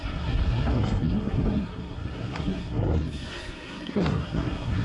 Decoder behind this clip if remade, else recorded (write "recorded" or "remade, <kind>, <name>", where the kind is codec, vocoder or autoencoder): remade, codec, SNAC